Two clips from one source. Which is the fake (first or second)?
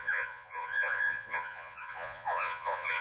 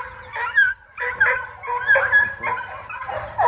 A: first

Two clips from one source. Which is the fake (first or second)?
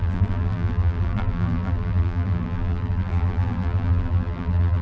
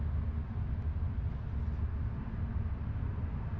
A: first